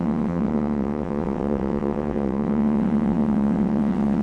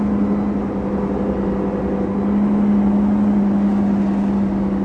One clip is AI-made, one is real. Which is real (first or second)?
second